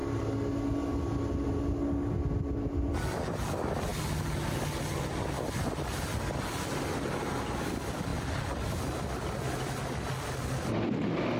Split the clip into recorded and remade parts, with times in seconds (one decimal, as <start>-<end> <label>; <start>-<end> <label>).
0.0-11.4 recorded